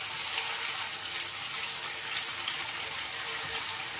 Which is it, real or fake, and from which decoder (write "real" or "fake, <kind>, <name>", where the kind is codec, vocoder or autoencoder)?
real